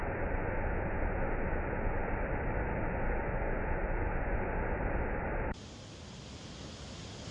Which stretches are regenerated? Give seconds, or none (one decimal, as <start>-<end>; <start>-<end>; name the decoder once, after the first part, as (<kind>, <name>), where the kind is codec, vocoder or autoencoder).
0.0-2.1 (vocoder, Vocos); 3.2-4.8